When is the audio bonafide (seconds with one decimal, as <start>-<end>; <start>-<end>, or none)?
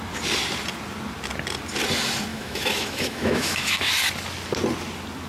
0.0-2.3; 3.9-5.3